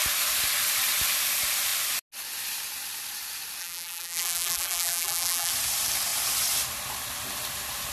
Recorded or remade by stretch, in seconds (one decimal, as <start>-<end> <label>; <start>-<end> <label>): 0.0-3.6 recorded; 3.6-5.5 remade; 5.5-7.9 recorded